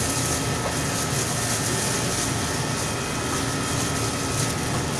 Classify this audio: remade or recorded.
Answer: recorded